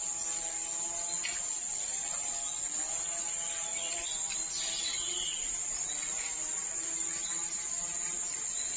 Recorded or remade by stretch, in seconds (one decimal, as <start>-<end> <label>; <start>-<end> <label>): 0.0-3.7 recorded; 3.7-4.3 remade; 4.3-8.8 recorded